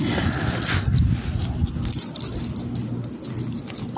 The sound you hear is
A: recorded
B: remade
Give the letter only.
A